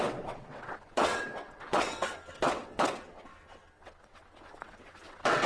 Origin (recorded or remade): remade